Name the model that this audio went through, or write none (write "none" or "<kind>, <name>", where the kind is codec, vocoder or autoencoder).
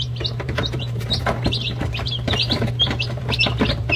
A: vocoder, BigVGAN v2